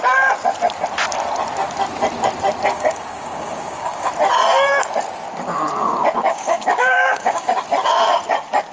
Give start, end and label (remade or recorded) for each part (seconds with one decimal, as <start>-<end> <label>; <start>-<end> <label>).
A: 0.0-2.7 recorded; 2.7-4.1 remade; 4.1-6.3 recorded; 6.3-7.6 remade; 7.6-8.7 recorded